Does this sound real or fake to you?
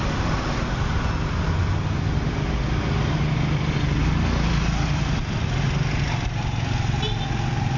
real